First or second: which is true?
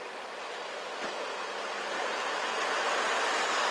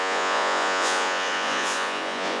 first